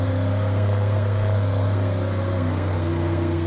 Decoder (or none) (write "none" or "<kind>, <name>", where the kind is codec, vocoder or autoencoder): codec, SNAC